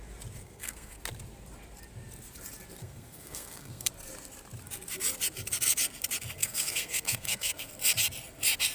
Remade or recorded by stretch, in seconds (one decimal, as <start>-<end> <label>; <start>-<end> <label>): 0.0-0.4 recorded; 0.4-1.0 remade; 1.0-2.8 recorded; 2.8-3.9 remade; 3.9-6.4 recorded; 6.4-7.7 remade; 7.7-8.7 recorded